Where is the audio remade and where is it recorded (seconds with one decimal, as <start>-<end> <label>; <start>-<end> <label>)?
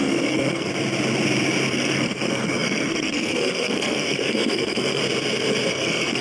0.0-0.7 remade; 0.7-1.7 recorded; 1.7-5.0 remade; 5.0-5.7 recorded; 5.7-6.2 remade